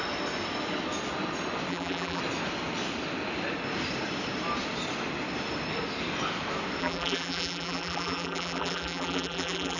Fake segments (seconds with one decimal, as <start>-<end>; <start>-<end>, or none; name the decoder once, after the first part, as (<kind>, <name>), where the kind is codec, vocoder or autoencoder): 1.7-2.2 (vocoder, BigVGAN v2); 6.8-9.8